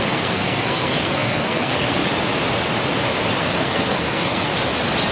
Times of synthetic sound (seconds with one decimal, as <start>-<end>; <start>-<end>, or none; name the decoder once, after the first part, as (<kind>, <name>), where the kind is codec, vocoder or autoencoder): 0.0-2.0 (codec, SNAC); 3.4-4.5